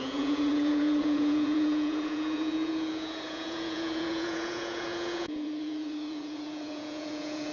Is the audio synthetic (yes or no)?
yes